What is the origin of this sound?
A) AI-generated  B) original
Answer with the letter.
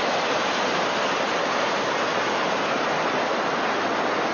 B